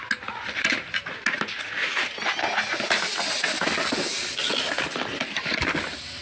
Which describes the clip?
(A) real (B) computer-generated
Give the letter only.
A